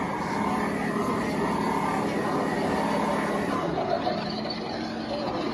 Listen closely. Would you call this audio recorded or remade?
recorded